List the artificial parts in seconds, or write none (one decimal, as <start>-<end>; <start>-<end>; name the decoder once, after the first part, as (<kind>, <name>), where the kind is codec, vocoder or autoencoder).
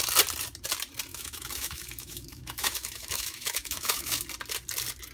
1.1-4.2 (autoencoder, DAC-VAE)